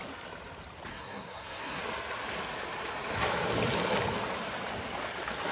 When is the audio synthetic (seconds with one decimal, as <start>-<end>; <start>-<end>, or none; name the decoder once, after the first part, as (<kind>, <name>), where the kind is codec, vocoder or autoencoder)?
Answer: 0.9-1.8 (codec, SNAC)